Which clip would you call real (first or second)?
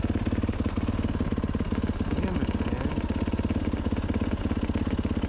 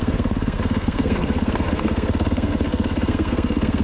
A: first